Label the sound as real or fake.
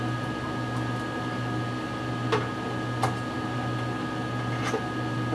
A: real